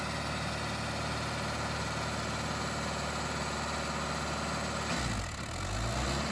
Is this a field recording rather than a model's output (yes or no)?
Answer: yes